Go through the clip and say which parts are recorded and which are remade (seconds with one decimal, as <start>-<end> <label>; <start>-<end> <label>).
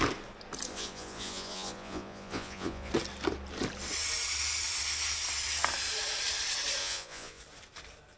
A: 0.0-0.7 recorded; 0.7-2.9 remade; 2.9-6.8 recorded; 6.8-7.4 remade; 7.4-8.2 recorded